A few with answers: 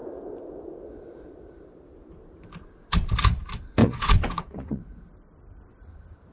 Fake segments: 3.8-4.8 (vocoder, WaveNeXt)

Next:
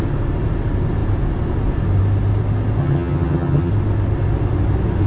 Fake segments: 2.8-3.7 (vocoder, HiFi-GAN)

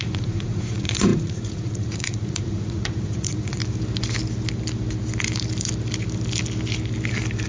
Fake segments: 0.0-3.6 (vocoder, Vocos)

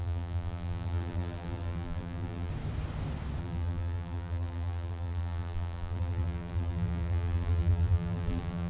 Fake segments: 0.0-2.5 (vocoder, BigVGAN v2); 3.4-8.7

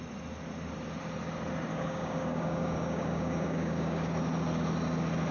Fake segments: 1.7-4.1 (codec, DAC)

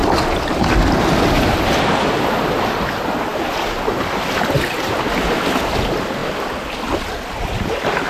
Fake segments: 6.2-7.1 (vocoder, BigVGAN v2)